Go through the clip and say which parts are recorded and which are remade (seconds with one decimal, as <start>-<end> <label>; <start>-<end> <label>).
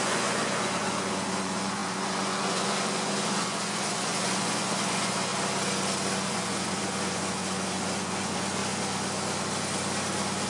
0.0-5.3 remade; 5.3-6.3 recorded; 6.3-8.6 remade; 8.6-10.5 recorded